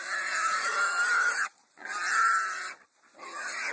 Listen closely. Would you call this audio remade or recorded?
recorded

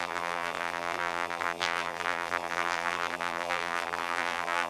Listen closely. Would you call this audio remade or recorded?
remade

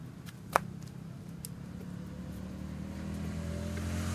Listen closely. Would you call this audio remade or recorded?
recorded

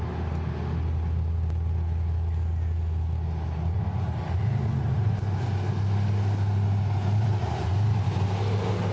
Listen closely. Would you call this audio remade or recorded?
recorded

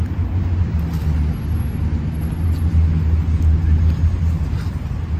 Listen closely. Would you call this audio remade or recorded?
recorded